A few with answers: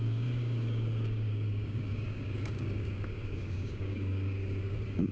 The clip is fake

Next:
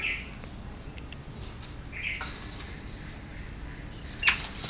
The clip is real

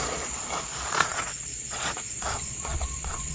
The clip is fake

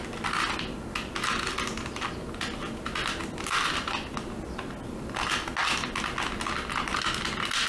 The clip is real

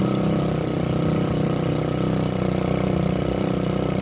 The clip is fake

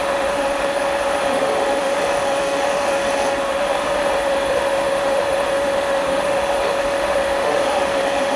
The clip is fake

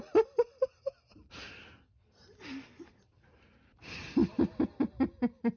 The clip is real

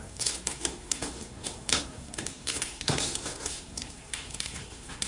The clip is fake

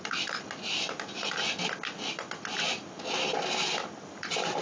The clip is real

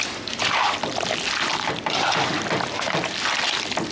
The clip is real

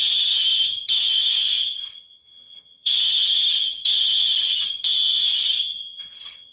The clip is fake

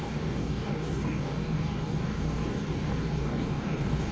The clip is fake